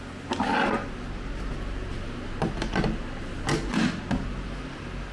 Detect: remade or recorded recorded